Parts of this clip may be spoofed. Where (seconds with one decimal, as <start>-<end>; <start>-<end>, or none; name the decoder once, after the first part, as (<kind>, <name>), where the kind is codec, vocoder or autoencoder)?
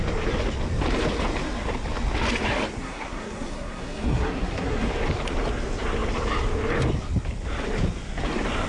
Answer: 2.8-4.9 (codec, SNAC)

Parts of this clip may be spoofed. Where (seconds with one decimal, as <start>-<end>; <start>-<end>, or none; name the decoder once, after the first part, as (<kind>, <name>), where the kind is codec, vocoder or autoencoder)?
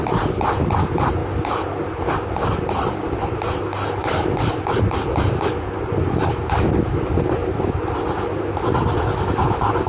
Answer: none